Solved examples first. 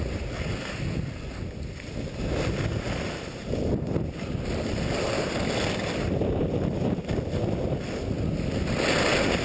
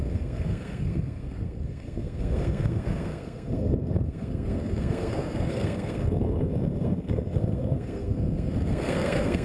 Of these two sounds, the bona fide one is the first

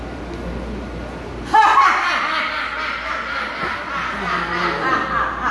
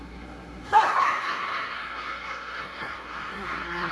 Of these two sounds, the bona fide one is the first